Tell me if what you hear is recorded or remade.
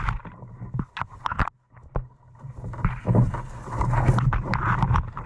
recorded